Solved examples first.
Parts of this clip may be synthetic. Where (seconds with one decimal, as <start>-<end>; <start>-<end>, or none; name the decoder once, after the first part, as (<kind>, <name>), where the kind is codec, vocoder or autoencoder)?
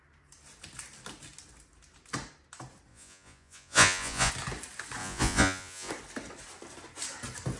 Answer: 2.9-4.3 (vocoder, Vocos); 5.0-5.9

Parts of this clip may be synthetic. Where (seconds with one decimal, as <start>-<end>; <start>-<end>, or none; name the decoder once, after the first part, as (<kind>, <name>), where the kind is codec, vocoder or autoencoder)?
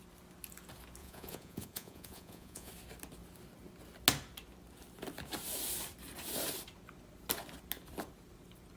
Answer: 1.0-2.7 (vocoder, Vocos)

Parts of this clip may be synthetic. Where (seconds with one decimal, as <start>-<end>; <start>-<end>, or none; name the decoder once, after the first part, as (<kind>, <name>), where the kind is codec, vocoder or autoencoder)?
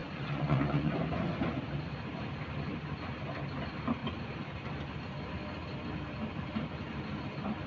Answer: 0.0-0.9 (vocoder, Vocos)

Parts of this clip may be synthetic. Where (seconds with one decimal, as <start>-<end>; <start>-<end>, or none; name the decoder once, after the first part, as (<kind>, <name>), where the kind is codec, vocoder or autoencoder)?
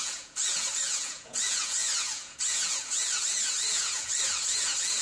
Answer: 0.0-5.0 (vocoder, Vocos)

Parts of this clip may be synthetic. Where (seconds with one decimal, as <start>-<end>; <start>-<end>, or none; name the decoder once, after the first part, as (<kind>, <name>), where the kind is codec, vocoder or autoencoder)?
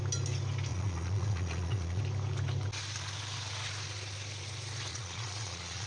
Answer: 0.7-2.0 (vocoder, Vocos); 4.9-5.9